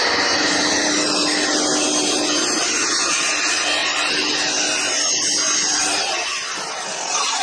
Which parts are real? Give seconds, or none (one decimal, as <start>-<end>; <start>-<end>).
0.0-7.4